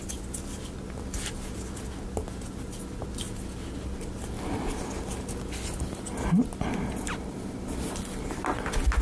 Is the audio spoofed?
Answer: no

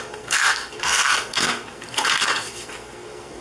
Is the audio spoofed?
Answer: yes